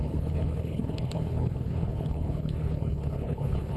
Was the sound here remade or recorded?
remade